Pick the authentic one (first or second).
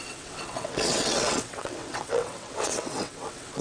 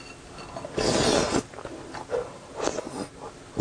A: second